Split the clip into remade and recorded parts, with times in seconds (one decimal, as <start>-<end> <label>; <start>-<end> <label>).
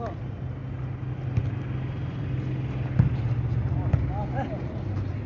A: 0.0-5.3 recorded